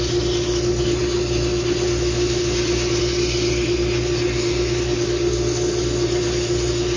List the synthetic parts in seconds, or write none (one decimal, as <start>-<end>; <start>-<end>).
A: none